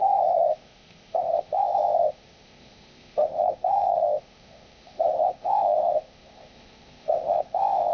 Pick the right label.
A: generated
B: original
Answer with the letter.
A